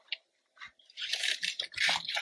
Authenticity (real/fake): real